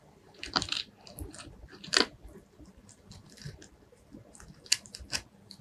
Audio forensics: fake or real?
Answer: real